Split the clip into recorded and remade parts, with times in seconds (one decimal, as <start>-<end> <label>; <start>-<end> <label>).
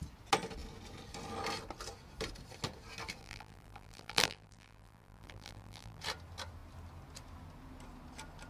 0.0-3.2 recorded; 3.2-6.0 remade; 6.0-8.5 recorded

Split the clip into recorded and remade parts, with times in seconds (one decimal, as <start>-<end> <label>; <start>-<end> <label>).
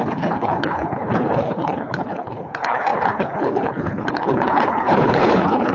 0.0-5.7 remade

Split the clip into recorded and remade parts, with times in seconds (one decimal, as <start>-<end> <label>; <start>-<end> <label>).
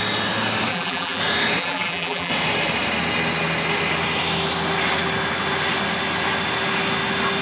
0.0-0.7 recorded; 0.7-1.2 remade; 1.2-1.6 recorded; 1.6-2.3 remade; 2.3-7.4 recorded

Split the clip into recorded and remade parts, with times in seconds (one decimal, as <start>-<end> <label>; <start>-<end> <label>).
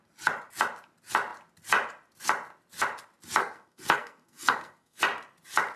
0.0-3.4 recorded; 3.4-5.0 remade; 5.0-5.8 recorded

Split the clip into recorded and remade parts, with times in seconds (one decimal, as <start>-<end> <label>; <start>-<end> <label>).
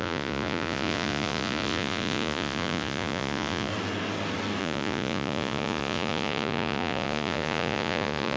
0.0-3.7 remade; 3.7-4.6 recorded; 4.6-8.4 remade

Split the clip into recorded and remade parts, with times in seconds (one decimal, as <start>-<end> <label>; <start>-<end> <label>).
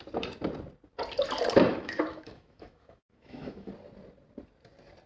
0.0-1.7 recorded; 1.7-3.7 remade; 3.7-5.1 recorded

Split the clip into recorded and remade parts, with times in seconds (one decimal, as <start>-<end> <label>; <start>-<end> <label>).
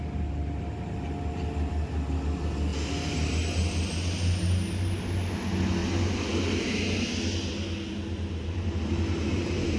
0.0-9.8 recorded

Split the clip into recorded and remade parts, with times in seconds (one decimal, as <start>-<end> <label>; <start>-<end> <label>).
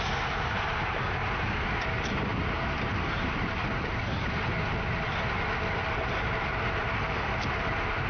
0.0-8.1 recorded